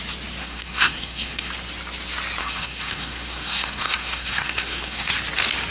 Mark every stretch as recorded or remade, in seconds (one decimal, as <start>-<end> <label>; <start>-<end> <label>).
0.0-0.4 recorded; 0.4-1.5 remade; 1.5-2.4 recorded; 2.4-5.1 remade; 5.1-5.7 recorded